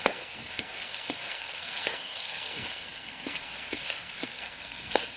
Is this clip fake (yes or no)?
yes